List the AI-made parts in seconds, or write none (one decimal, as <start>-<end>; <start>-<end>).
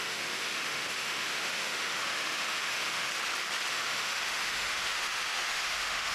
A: 0.0-3.1; 3.7-6.1